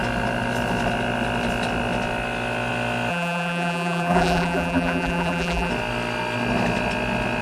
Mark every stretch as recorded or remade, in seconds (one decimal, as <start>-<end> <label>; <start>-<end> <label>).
0.0-3.1 recorded; 3.1-5.7 remade; 5.7-7.4 recorded

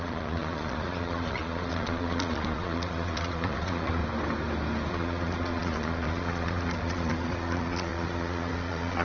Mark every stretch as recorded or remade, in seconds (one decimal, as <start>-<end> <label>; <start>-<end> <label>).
0.0-4.0 remade; 4.0-4.9 recorded; 4.9-9.0 remade

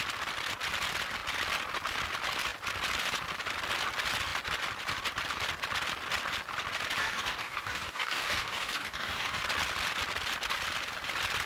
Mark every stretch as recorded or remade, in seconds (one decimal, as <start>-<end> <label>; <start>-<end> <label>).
0.0-7.0 recorded; 7.0-9.4 remade; 9.4-11.5 recorded